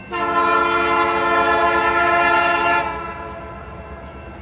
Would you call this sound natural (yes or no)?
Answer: yes